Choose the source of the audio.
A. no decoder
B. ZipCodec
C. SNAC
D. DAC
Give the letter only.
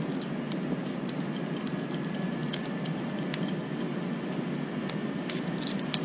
A